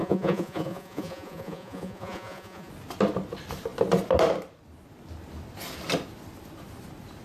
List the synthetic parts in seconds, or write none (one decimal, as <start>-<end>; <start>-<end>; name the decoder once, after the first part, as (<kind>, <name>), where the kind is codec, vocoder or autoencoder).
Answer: 0.0-2.7 (vocoder, Vocos)